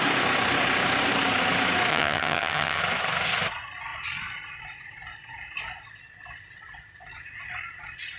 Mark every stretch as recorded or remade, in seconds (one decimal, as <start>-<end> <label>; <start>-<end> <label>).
0.0-1.9 recorded; 1.9-2.8 remade; 2.8-8.2 recorded